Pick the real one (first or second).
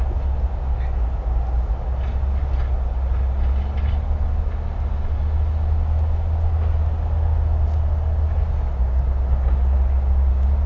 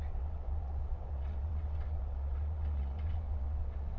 first